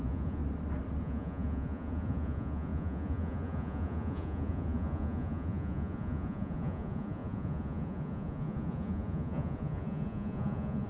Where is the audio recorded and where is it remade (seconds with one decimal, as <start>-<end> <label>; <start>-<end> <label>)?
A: 0.0-0.4 remade; 0.4-1.0 recorded; 1.0-10.9 remade